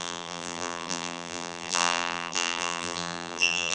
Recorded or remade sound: remade